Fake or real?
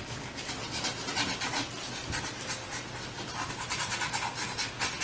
real